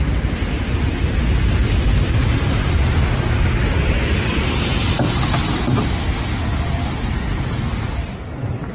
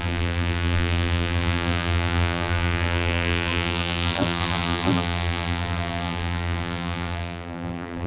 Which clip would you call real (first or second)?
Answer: first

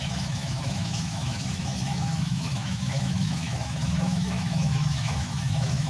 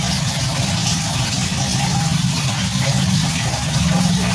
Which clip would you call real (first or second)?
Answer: second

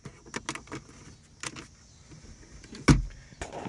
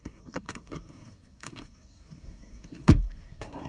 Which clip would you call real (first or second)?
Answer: first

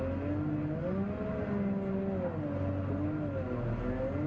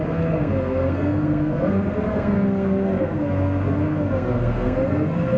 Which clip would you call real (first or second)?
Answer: first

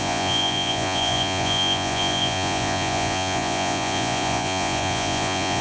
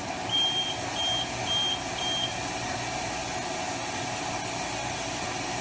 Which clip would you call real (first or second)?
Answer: second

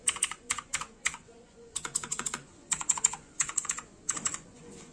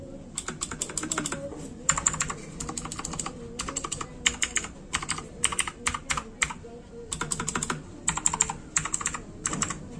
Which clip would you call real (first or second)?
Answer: second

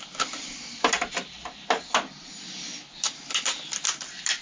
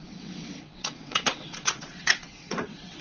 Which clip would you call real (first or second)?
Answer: first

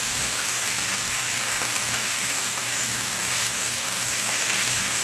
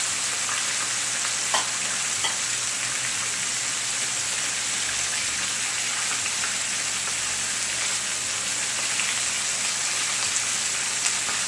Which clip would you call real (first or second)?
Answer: second